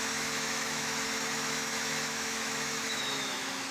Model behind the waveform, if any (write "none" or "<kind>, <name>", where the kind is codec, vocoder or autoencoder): autoencoder, DAC-VAE